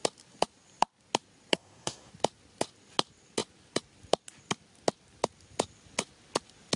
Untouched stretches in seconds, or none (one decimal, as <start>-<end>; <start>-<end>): 0.0-1.5; 2.1-6.8